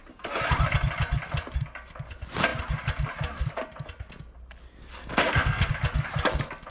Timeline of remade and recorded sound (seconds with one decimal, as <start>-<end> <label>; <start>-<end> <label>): 0.0-5.0 recorded; 5.0-5.7 remade; 5.7-6.7 recorded